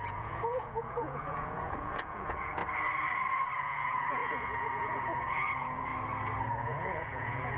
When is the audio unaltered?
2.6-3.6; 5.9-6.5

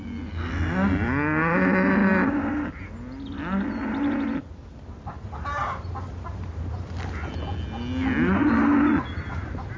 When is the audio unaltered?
0.0-9.8